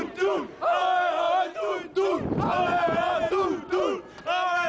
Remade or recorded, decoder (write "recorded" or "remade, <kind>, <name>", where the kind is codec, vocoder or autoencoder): recorded